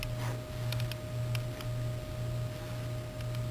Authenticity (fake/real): real